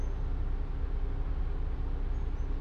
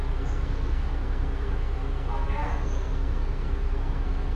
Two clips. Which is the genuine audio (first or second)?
first